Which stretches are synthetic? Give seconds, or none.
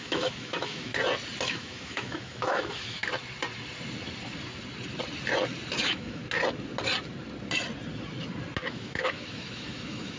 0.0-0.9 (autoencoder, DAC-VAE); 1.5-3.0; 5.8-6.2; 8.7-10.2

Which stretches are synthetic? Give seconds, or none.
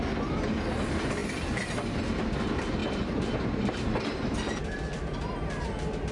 2.8-3.7 (vocoder, BigVGAN v2); 4.6-5.2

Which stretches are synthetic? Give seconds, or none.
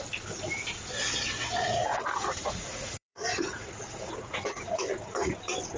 1.8-5.3 (vocoder, Vocos)